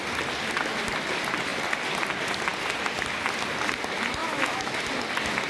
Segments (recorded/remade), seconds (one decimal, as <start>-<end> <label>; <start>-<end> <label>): 0.0-4.2 recorded; 4.2-4.8 remade; 4.8-5.5 recorded